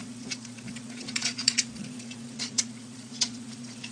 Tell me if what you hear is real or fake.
fake